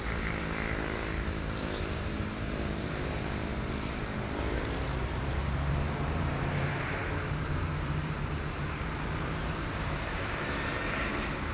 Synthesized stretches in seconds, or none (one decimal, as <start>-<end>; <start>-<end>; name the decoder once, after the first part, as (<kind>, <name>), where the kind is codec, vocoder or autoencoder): 0.0-11.5 (vocoder, BigVGAN v2)